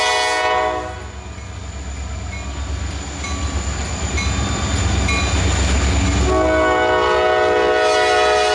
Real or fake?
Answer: real